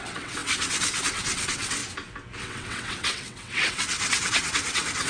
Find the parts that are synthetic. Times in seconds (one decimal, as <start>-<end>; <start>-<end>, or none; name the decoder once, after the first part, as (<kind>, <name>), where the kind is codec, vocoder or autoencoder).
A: 0.0-1.8 (vocoder, WaveNeXt); 2.4-5.1